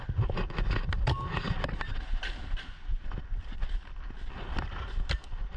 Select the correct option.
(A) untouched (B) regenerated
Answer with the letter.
A